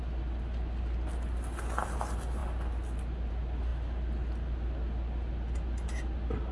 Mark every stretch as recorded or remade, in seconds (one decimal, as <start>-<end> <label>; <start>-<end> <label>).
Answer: 0.0-6.5 recorded